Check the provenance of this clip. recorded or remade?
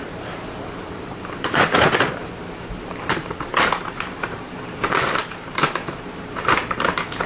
remade